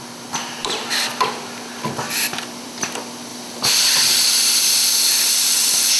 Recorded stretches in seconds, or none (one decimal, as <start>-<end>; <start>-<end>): 0.0-3.3; 5.3-6.0